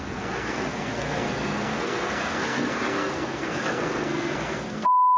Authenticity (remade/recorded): remade